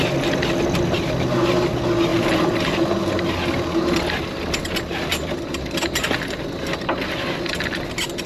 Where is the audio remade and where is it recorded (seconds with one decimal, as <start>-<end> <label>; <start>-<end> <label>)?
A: 0.0-8.3 recorded